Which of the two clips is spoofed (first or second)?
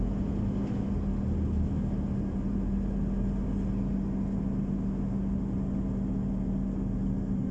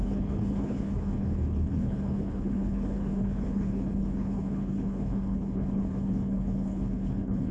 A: second